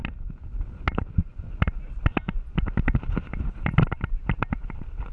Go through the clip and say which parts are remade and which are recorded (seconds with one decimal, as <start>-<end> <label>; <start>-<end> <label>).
0.0-5.1 recorded